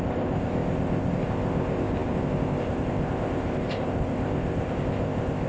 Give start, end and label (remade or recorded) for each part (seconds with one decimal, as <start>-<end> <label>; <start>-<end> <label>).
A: 0.0-5.5 remade